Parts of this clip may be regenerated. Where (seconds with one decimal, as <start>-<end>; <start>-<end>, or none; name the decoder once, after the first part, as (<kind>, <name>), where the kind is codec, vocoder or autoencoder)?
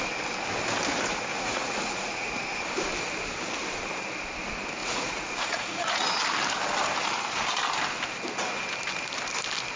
1.3-2.4 (vocoder, Vocos); 4.8-6.0